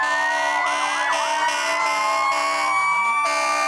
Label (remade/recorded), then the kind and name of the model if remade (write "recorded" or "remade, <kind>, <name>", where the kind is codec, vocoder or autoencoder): recorded